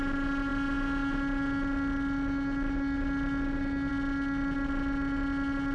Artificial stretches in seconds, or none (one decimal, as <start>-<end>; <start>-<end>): none